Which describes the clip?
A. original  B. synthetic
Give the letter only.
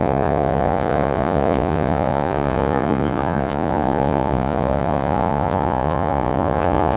B